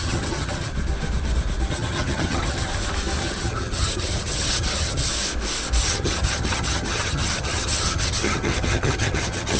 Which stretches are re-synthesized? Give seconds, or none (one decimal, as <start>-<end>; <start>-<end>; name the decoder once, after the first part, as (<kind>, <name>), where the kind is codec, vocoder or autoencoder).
0.0-0.7 (vocoder, HiFi-GAN); 1.7-2.7; 3.2-5.1; 5.8-9.6